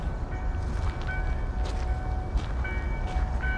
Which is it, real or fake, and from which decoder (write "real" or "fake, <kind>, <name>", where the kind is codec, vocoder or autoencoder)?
real